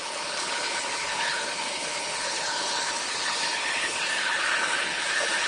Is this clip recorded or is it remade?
remade